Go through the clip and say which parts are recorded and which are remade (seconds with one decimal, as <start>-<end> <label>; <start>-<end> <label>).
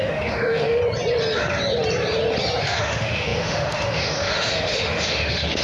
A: 0.0-0.8 remade; 0.8-2.6 recorded; 2.6-5.6 remade